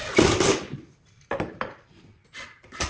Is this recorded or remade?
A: recorded